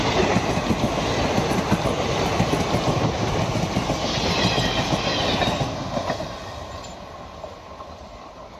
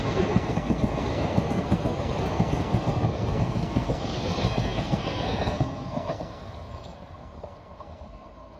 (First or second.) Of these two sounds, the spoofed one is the second